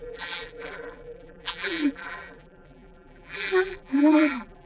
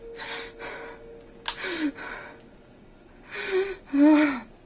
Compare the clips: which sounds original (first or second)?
second